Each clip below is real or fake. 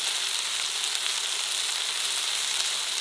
real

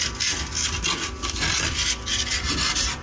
real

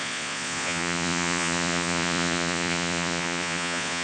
fake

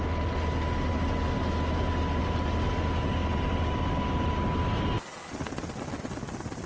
real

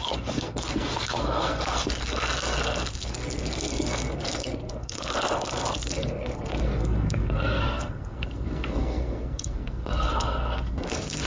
fake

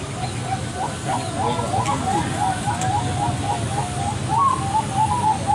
real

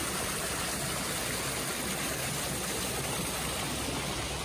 real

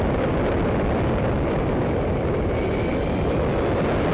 real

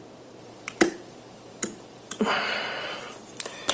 fake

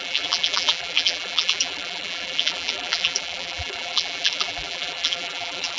fake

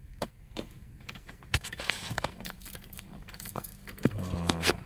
fake